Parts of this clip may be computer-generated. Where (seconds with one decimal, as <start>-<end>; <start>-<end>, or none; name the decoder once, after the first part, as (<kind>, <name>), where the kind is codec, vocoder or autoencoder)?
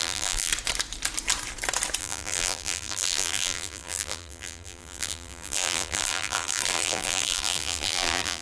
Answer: 0.0-0.5 (vocoder, BigVGAN v2); 2.0-8.4